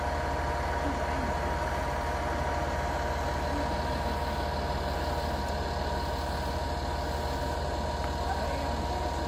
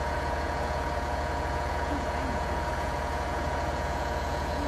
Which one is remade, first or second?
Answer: second